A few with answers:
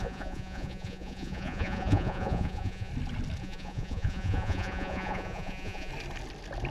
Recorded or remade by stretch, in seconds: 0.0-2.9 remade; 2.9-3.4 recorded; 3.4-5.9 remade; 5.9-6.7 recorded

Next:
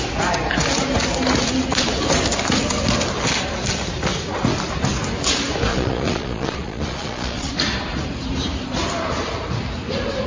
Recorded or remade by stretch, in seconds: 0.0-5.7 recorded; 5.7-7.5 remade; 7.5-10.3 recorded

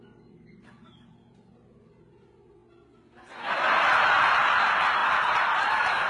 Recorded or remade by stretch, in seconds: 0.0-6.1 recorded

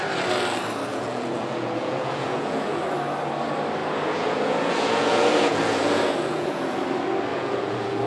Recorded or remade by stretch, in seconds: 0.0-0.9 recorded; 0.9-2.8 remade; 2.8-3.8 recorded; 3.8-6.8 remade; 6.8-7.3 recorded; 7.3-8.1 remade

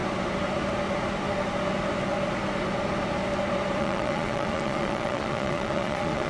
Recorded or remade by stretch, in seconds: 0.0-3.8 recorded; 3.8-6.3 remade

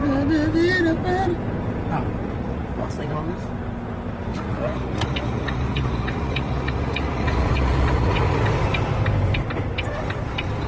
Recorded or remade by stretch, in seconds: 0.0-2.2 recorded; 2.2-3.1 remade; 3.1-4.3 recorded; 4.3-8.4 remade; 8.4-10.7 recorded

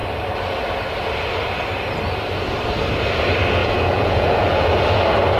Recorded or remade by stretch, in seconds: 0.0-3.6 recorded; 3.6-5.0 remade; 5.0-5.4 recorded

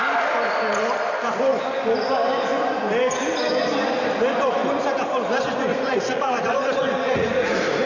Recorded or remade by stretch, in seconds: 0.0-5.7 recorded; 5.7-7.9 remade